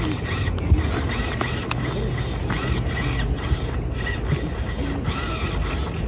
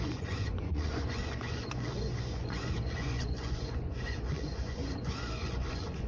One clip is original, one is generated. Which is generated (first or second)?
second